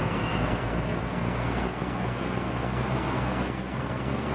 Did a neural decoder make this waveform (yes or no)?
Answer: yes